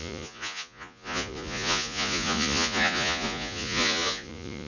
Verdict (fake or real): fake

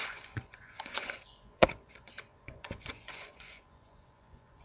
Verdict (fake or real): fake